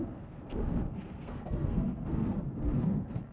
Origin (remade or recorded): remade